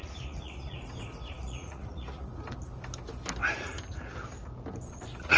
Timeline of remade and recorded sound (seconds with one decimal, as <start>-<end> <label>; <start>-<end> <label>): 0.0-0.8 remade; 0.8-1.3 recorded; 1.3-2.3 remade; 2.3-4.9 recorded; 4.9-5.4 remade